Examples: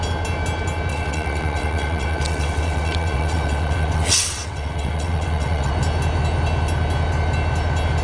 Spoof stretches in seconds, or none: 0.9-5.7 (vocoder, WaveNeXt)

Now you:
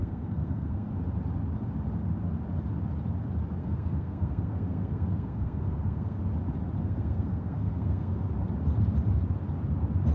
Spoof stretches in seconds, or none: 0.0-1.0 (codec, SNAC); 3.6-6.2; 6.8-8.3